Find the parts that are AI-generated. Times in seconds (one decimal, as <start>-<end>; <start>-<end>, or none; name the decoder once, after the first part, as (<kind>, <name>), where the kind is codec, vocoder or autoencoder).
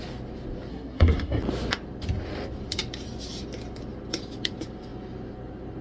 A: 0.7-1.4 (codec, SNAC)